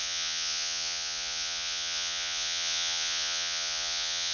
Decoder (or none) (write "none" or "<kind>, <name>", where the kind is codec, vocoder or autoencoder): vocoder, Vocos